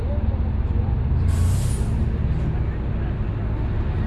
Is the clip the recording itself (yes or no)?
yes